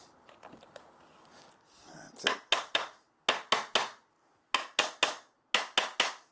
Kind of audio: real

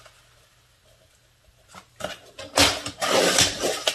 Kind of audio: real